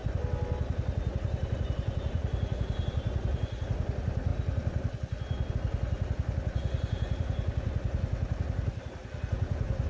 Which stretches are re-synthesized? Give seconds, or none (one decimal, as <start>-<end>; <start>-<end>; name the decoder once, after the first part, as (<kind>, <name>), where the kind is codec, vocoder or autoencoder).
none

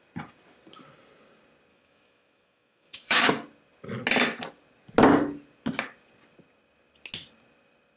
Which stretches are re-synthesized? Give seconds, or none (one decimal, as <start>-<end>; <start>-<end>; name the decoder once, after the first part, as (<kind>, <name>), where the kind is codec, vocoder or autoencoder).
1.7-3.3 (autoencoder, DAC-VAE)

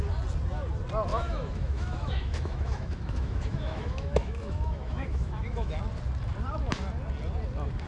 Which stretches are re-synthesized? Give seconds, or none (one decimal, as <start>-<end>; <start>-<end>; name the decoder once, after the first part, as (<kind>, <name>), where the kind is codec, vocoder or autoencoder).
1.1-5.8 (autoencoder, DAC-VAE)

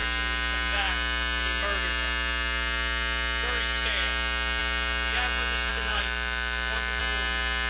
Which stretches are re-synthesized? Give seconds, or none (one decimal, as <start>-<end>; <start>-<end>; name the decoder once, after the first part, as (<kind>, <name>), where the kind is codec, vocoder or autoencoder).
5.7-7.0 (autoencoder, DAC-VAE)

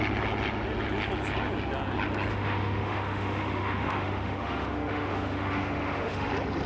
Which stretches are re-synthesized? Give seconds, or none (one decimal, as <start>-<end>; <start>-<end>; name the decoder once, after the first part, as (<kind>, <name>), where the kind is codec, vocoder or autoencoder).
2.3-6.3 (autoencoder, DAC-VAE)